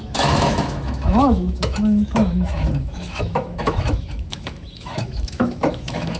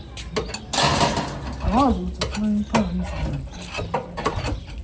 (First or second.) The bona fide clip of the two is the second